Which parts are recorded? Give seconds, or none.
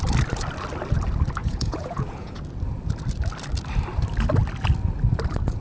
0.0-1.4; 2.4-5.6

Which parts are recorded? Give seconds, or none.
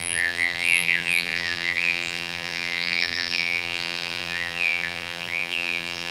none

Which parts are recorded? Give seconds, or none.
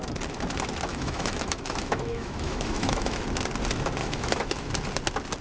0.0-0.9; 3.2-4.0; 4.7-5.4